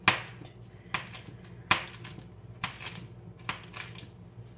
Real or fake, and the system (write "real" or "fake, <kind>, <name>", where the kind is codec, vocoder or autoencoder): real